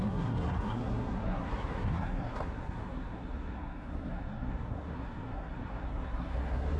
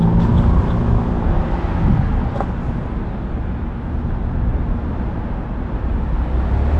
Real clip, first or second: second